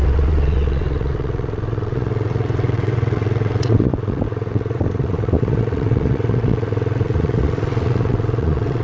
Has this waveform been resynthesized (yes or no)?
yes